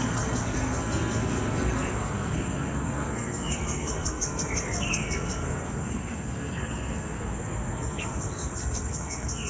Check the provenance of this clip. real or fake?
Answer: fake